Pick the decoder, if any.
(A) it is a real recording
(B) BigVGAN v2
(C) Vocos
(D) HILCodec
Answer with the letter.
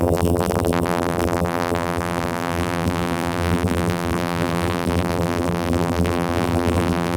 B